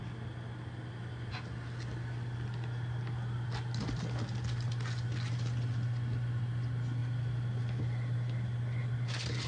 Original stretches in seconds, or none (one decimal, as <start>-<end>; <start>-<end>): 0.0-7.0; 8.8-9.5

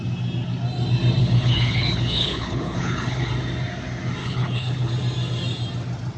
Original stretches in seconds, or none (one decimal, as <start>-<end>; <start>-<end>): 0.0-1.2; 3.3-4.2; 4.9-6.2

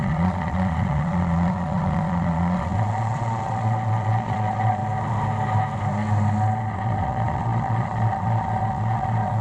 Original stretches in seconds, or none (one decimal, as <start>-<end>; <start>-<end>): 4.8-6.7

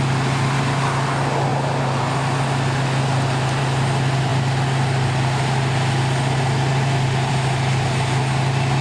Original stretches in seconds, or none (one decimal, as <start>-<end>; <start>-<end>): 0.0-8.8